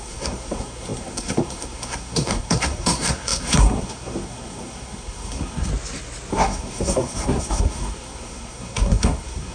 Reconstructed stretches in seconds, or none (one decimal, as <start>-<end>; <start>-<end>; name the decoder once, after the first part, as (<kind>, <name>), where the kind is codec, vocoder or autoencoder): 0.0-5.7 (codec, SNAC); 6.3-9.5